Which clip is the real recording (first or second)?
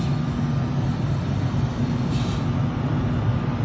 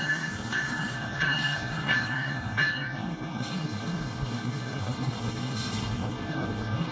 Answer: first